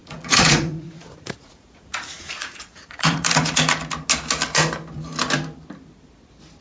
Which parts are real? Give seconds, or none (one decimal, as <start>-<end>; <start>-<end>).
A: 3.5-6.6